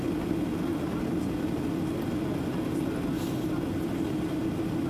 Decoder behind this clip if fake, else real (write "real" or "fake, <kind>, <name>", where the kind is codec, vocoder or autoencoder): real